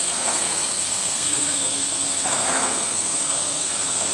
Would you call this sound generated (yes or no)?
yes